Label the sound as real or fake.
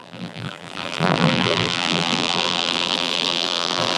fake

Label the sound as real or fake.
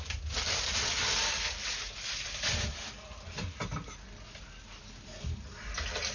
real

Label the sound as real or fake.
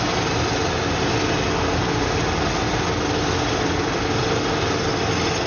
real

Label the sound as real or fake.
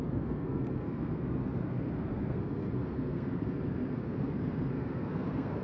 fake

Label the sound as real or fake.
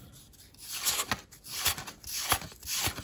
real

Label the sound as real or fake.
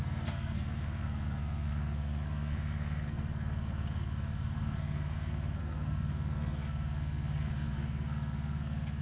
fake